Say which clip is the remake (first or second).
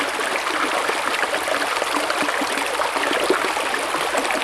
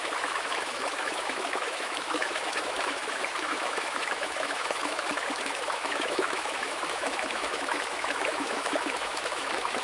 second